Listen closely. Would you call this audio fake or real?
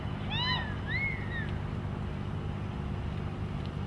real